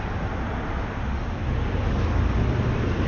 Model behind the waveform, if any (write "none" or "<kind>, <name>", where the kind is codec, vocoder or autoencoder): none